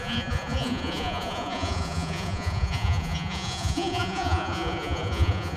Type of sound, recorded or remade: remade